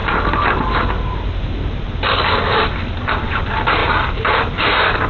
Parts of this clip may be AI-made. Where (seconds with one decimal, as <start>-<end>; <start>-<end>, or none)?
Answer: none